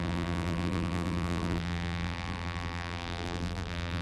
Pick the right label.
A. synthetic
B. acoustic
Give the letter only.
A